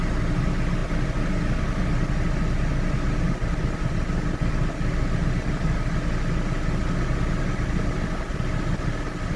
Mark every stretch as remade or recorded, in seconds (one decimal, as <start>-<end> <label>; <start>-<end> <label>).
0.0-9.4 recorded